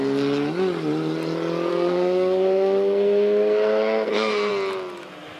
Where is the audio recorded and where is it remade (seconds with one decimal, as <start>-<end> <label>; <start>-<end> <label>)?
0.0-1.7 recorded; 1.7-4.5 remade; 4.5-5.4 recorded

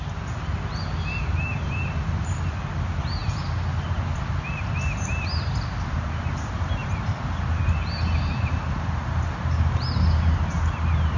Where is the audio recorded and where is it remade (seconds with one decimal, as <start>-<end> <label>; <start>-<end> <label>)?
0.0-11.2 recorded

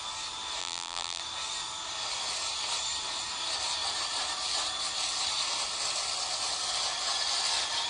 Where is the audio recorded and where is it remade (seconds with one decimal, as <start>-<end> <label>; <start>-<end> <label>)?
0.0-0.6 recorded; 0.6-1.2 remade; 1.2-7.9 recorded

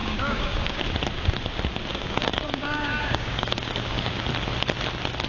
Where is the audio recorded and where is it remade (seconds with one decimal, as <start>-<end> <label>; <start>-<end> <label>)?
0.0-0.8 remade; 0.8-1.9 recorded; 1.9-4.2 remade; 4.2-5.3 recorded

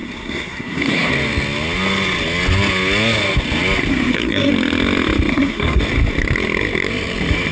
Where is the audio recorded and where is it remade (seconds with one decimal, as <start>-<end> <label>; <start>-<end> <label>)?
0.0-1.1 remade; 1.1-3.9 recorded; 3.9-4.5 remade; 4.5-5.3 recorded; 5.3-5.8 remade; 5.8-7.5 recorded